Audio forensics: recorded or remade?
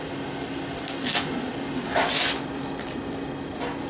recorded